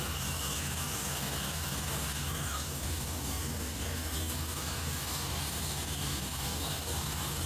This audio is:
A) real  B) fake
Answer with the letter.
B